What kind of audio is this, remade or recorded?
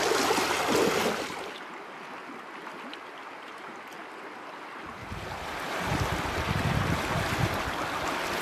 recorded